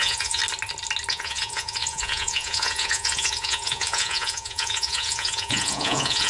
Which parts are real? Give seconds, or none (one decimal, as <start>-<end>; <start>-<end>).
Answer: 0.4-1.1